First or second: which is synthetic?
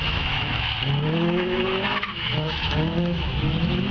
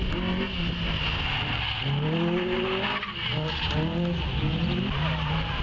first